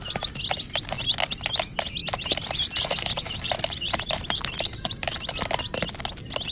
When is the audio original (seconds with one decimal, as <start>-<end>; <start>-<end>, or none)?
0.0-2.0; 5.2-6.5